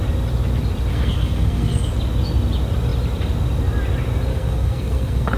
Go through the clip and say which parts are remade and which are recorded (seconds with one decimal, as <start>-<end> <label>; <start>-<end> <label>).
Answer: 0.0-0.9 recorded; 0.9-1.9 remade; 1.9-4.3 recorded; 4.3-5.4 remade